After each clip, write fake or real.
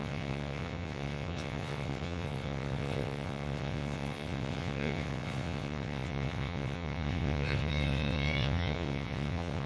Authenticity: fake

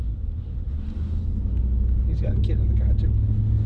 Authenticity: real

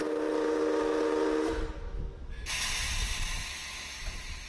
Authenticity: real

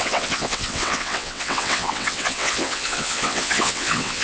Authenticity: fake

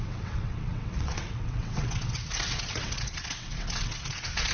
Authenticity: fake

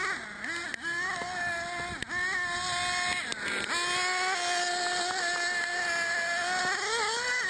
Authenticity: real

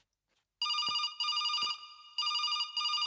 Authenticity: real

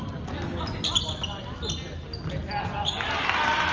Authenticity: real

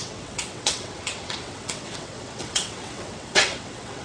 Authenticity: fake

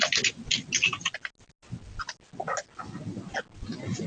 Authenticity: real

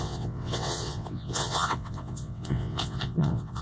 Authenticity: fake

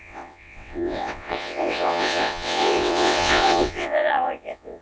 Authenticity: fake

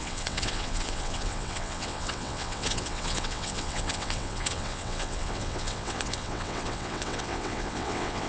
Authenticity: fake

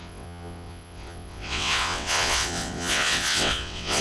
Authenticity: fake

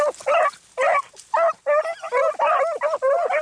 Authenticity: real